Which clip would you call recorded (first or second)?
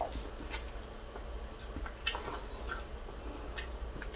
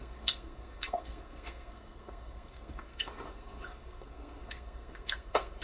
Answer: first